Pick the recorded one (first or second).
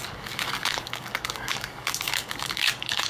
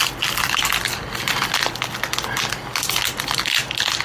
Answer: second